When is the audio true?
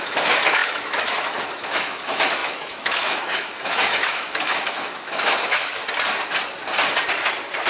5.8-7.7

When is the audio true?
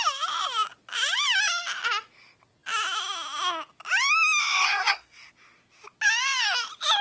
0.0-4.4; 5.3-7.0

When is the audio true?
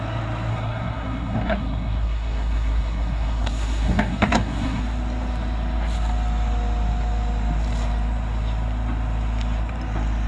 0.0-0.5; 4.8-10.3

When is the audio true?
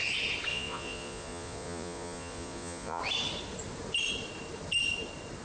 0.0-0.5; 3.0-5.4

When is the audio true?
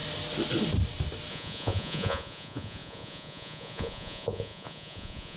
0.0-1.3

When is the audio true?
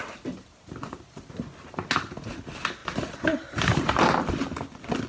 0.0-2.8